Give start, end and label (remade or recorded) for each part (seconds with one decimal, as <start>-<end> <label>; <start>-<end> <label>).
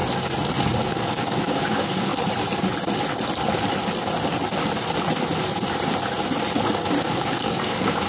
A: 0.0-0.8 recorded; 0.8-2.1 remade; 2.1-7.0 recorded; 7.0-8.1 remade